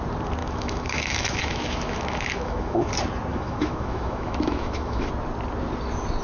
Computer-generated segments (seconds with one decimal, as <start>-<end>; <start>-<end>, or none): 0.4-2.9; 3.3-5.1